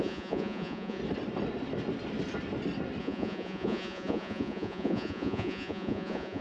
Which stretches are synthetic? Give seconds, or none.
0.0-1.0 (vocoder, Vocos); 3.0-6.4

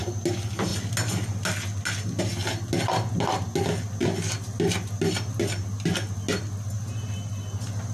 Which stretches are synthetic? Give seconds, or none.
none

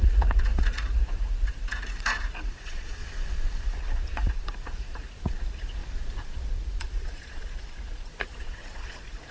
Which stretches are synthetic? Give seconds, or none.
0.0-3.0 (vocoder, Vocos); 3.8-5.8; 6.5-9.3

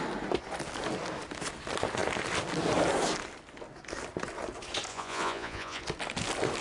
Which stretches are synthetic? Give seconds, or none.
4.9-5.8 (vocoder, Vocos)